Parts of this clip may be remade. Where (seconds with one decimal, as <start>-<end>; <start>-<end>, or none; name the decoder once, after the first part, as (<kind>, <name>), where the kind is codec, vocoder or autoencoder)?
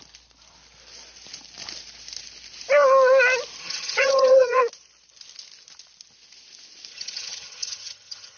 3.6-4.6 (vocoder, HiFi-GAN); 6.9-8.4